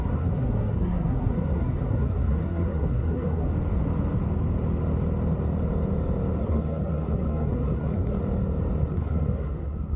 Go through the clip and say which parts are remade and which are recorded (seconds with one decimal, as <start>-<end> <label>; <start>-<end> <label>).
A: 0.0-3.5 remade; 3.5-6.4 recorded; 6.4-8.2 remade; 8.2-8.9 recorded; 8.9-10.0 remade